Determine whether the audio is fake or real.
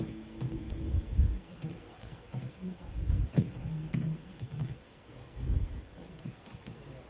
fake